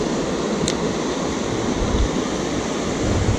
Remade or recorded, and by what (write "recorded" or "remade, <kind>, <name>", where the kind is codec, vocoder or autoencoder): recorded